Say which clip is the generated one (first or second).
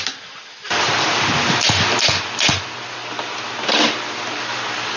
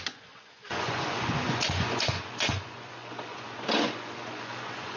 second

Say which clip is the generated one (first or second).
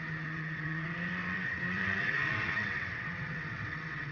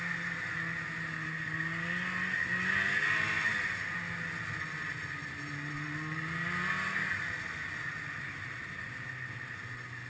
first